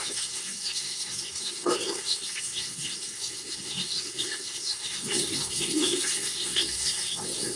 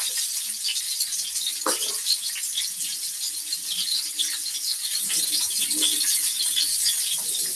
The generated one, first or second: first